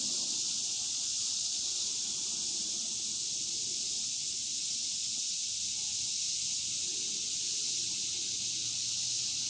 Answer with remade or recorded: recorded